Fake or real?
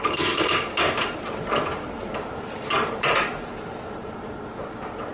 fake